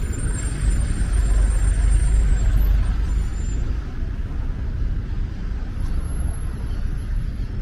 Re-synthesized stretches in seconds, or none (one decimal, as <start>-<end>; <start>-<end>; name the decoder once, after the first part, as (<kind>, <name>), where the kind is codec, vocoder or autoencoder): 2.0-2.5 (vocoder, BigVGAN v2)